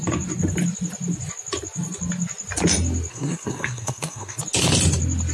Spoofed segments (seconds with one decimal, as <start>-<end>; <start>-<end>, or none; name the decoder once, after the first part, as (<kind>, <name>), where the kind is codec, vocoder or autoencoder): 3.1-4.4 (codec, SNAC)